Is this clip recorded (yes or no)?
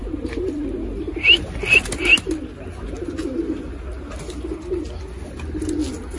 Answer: yes